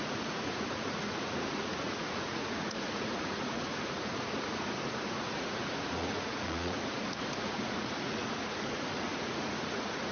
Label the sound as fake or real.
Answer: fake